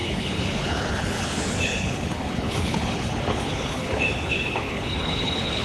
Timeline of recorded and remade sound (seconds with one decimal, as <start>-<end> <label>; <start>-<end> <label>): 0.0-5.6 remade